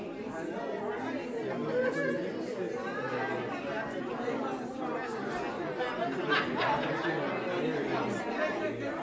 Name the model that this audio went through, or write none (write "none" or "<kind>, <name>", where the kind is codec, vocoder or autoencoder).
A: none